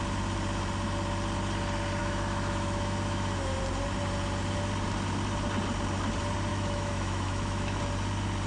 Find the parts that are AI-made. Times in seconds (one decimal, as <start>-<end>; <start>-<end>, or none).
2.0-3.6; 6.5-7.8